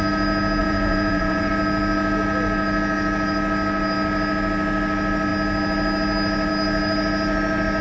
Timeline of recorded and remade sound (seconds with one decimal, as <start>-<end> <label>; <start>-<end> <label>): 0.0-0.6 recorded; 0.6-1.5 remade; 1.5-7.8 recorded